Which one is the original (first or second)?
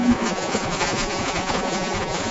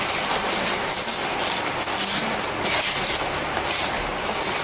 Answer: second